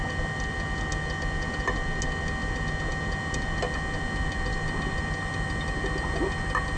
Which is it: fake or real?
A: real